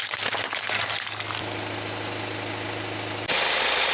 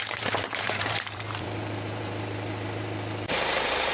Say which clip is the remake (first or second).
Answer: second